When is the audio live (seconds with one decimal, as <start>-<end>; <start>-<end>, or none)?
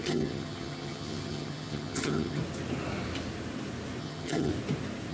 2.4-4.0; 4.5-5.1